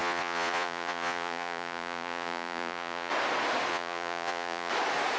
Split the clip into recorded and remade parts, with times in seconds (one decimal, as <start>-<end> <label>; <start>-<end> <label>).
0.0-3.1 remade; 3.1-3.7 recorded; 3.7-4.7 remade; 4.7-5.2 recorded